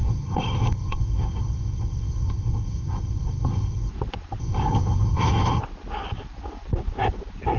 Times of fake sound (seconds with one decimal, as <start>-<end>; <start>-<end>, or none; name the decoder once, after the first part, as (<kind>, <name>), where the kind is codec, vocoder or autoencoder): 0.0-3.9 (codec, SNAC); 4.4-5.6